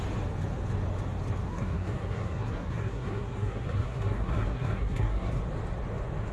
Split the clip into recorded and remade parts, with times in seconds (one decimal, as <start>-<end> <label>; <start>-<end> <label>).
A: 0.0-1.5 recorded; 1.5-5.3 remade; 5.3-6.3 recorded